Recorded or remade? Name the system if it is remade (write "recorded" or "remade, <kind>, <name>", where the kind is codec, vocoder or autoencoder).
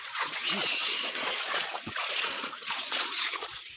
remade, vocoder, Vocos